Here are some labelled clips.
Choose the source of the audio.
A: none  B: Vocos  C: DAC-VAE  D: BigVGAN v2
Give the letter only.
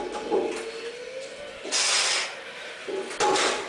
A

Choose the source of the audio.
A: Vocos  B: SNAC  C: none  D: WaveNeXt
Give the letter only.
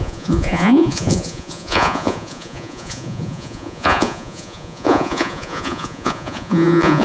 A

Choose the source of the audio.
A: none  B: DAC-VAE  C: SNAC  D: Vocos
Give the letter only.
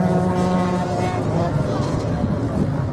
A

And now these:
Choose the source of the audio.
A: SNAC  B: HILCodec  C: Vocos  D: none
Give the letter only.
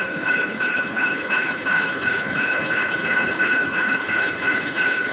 B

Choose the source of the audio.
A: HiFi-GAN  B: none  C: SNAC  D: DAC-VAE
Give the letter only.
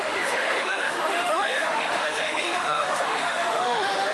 D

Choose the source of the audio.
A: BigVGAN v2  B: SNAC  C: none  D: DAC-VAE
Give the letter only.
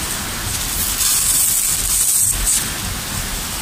C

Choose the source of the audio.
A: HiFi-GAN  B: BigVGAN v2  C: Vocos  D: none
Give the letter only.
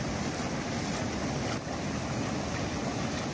D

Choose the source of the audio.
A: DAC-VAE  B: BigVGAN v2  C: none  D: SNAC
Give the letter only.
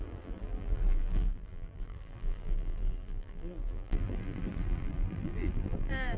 B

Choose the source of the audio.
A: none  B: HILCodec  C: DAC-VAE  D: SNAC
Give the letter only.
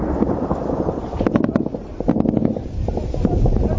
A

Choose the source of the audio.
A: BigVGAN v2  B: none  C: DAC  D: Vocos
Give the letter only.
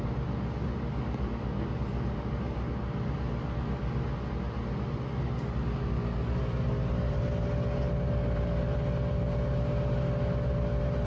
B